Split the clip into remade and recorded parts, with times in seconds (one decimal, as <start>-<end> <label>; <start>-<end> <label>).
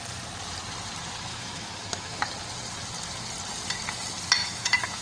0.0-1.3 recorded; 1.3-2.2 remade; 2.2-4.4 recorded; 4.4-5.0 remade